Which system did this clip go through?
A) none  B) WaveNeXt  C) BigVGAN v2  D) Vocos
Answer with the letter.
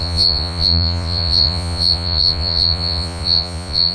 D